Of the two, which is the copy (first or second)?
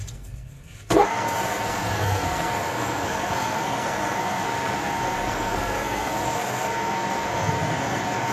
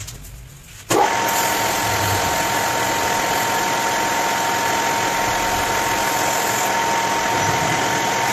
first